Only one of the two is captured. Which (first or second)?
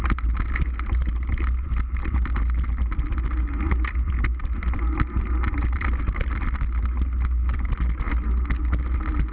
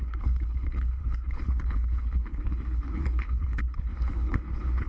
first